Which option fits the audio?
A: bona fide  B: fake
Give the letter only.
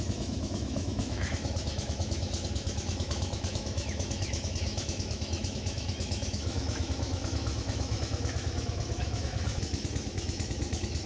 B